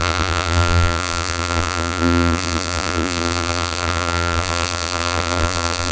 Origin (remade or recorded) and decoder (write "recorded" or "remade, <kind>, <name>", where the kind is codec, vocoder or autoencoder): remade, vocoder, BigVGAN v2